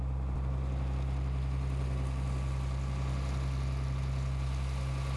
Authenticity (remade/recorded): recorded